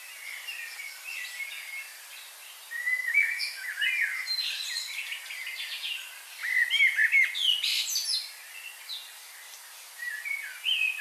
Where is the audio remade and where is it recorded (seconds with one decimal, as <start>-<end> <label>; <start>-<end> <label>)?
0.0-2.8 recorded; 2.8-3.7 remade; 3.7-11.0 recorded